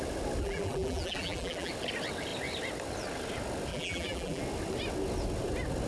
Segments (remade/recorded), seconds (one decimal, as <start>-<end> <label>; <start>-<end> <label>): 0.0-0.4 recorded; 0.4-1.7 remade; 1.7-3.7 recorded; 3.7-4.4 remade; 4.4-5.9 recorded